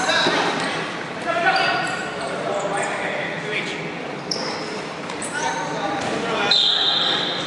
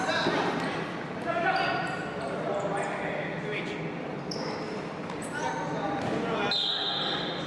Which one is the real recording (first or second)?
second